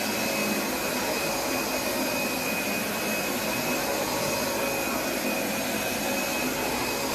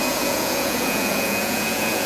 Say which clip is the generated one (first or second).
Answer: second